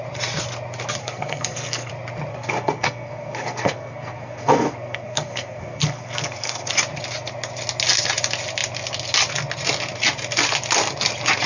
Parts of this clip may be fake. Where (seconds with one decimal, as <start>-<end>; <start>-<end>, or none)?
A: 1.0-1.9; 2.3-6.7